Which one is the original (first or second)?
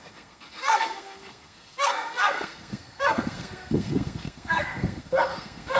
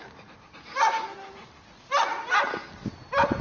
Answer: second